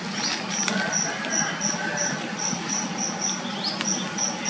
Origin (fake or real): real